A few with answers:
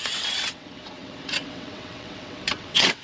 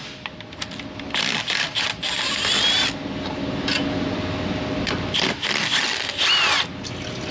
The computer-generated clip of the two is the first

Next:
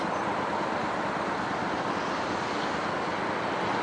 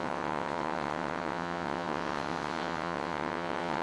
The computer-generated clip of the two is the second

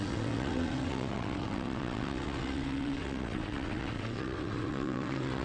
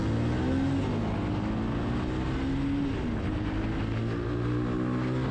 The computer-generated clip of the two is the first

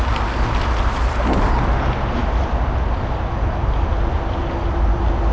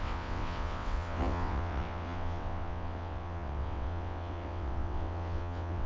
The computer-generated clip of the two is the second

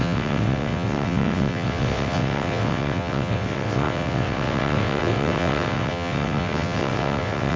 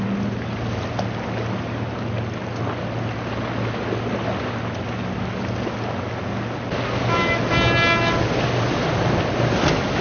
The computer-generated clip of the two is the first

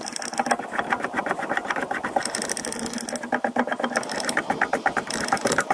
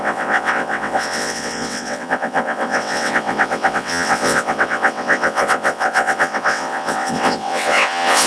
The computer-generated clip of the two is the second